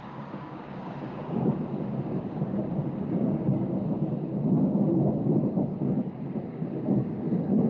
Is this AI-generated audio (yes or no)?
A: yes